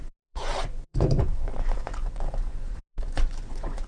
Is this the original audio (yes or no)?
no